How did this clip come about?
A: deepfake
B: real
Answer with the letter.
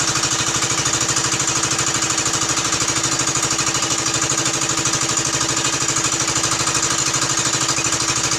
B